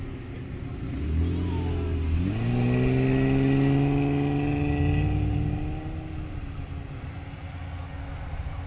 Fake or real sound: real